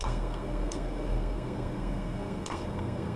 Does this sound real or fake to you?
fake